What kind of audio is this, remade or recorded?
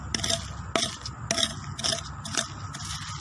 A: recorded